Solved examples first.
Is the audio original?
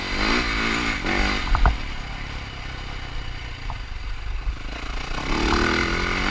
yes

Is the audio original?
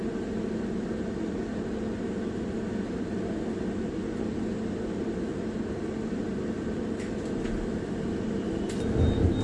yes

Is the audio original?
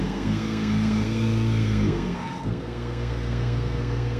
no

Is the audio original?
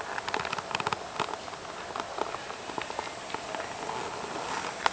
yes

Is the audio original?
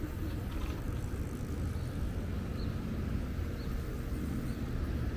yes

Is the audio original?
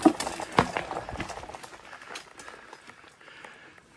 yes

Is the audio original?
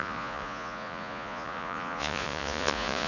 no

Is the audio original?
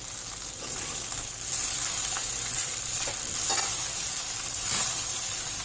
yes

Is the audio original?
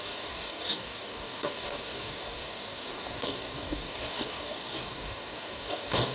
no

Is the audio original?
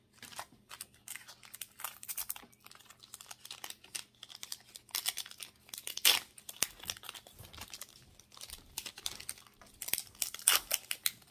yes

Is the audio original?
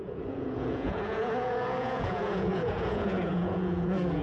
no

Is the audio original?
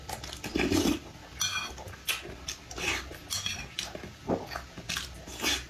yes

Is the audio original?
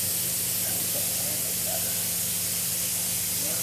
yes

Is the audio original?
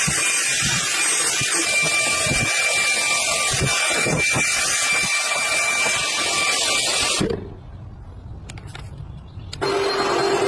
yes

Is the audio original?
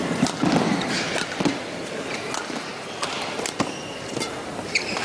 yes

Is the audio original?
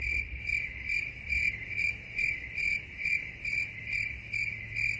yes